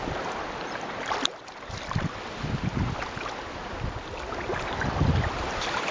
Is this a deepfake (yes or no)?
no